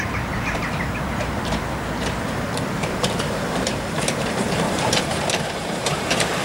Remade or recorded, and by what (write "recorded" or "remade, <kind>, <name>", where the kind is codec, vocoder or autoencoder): remade, vocoder, BigVGAN v2